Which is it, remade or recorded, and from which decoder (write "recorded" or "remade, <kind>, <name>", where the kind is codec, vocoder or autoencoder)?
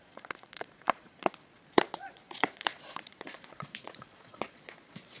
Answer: remade, vocoder, Vocos